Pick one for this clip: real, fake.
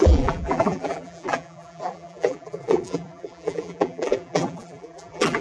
fake